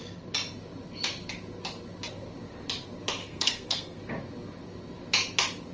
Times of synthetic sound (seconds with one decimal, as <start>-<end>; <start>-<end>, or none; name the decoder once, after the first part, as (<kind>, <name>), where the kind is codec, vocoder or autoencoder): 3.2-4.0 (codec, SNAC)